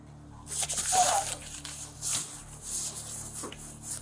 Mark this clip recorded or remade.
recorded